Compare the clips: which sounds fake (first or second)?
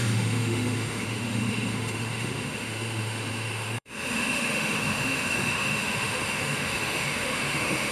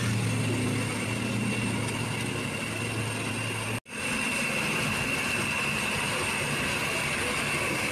first